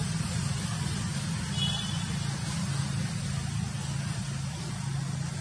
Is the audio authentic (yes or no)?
yes